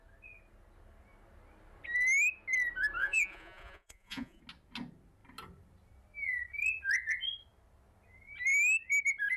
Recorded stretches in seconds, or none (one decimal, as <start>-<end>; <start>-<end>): 0.0-3.0; 4.4-9.4